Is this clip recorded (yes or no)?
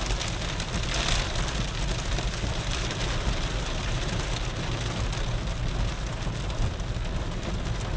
yes